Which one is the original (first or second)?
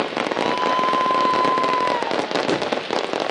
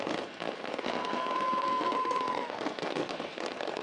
first